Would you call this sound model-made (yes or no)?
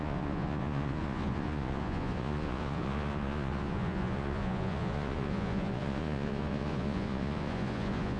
yes